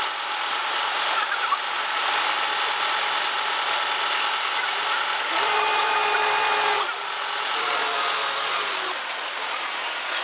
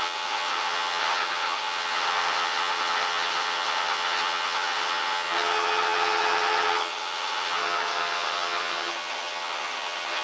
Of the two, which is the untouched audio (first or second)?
first